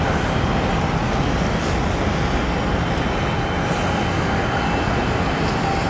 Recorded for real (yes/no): yes